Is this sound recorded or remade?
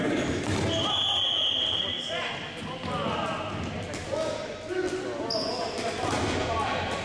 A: recorded